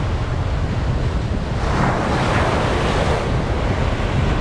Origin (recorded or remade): recorded